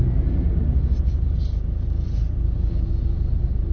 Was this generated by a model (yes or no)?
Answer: no